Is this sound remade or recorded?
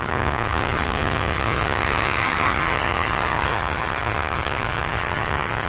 remade